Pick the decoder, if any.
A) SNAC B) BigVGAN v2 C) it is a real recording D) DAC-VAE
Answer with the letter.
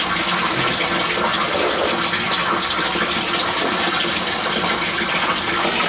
C